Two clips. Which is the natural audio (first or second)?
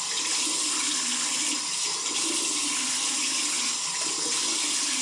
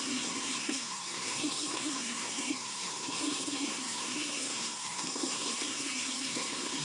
first